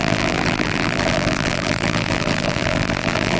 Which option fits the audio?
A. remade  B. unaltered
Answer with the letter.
A